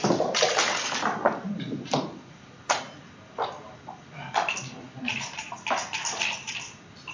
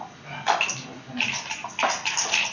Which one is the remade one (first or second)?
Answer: first